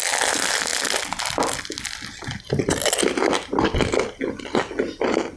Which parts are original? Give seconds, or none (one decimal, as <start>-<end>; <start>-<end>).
0.0-5.4